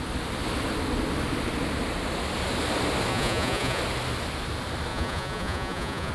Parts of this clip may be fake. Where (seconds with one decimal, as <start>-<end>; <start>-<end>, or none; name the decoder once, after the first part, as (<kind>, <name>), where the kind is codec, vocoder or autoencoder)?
3.1-3.8 (vocoder, Vocos); 4.9-6.1